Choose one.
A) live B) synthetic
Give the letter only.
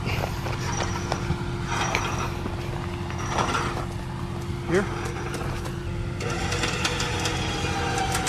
A